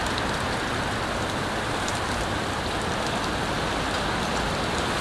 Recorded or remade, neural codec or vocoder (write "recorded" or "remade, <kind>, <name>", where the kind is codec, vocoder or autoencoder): recorded